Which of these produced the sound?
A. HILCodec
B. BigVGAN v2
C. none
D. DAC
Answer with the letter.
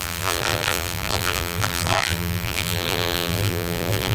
B